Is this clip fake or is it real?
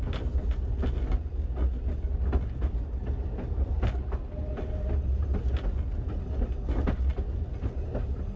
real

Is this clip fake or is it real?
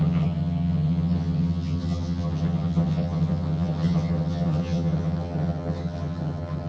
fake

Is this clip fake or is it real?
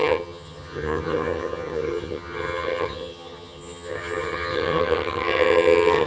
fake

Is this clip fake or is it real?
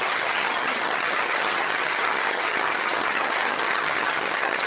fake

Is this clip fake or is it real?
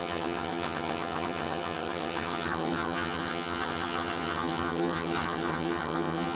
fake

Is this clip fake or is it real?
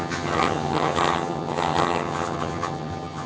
fake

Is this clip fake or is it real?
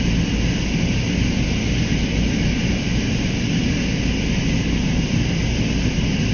real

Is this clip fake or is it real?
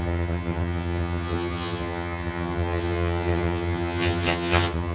fake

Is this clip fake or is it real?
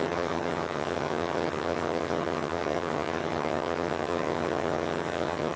fake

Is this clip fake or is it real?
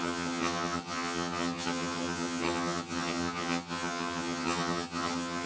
fake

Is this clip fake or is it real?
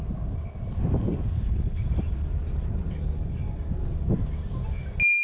real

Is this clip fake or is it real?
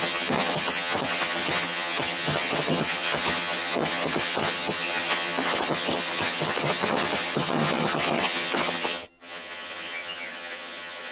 fake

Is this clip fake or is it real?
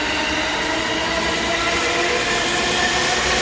real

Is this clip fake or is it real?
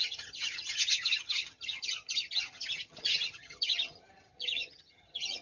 fake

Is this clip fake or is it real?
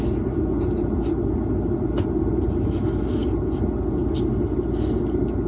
real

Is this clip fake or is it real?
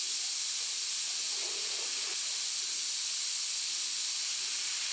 real